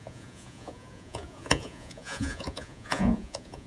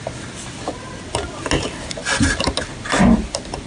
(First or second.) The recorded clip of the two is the second